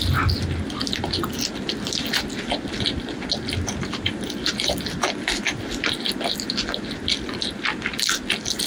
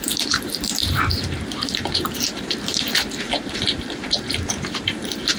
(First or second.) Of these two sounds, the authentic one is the first